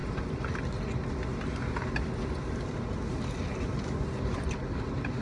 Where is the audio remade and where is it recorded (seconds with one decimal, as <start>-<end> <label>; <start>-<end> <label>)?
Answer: 0.0-3.1 recorded; 3.1-3.5 remade; 3.5-4.0 recorded; 4.0-5.2 remade